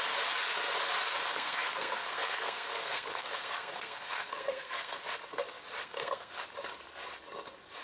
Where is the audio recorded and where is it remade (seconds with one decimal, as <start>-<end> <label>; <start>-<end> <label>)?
0.0-1.3 recorded; 1.3-4.9 remade; 4.9-5.8 recorded; 5.8-6.3 remade; 6.3-7.8 recorded